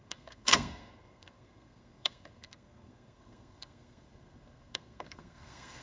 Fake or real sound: fake